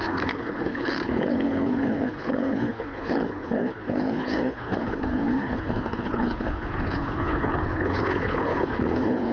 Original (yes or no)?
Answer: no